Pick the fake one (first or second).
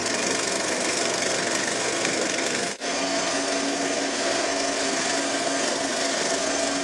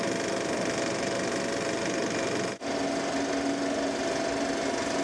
first